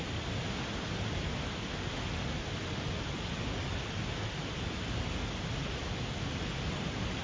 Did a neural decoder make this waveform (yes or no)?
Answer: no